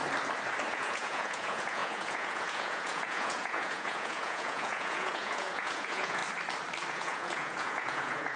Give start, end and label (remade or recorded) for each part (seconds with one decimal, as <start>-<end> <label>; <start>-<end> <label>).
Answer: 0.0-0.7 recorded; 0.7-6.2 remade; 6.2-6.9 recorded; 6.9-8.4 remade